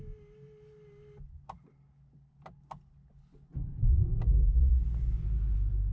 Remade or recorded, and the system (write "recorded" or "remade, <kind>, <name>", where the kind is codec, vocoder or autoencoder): recorded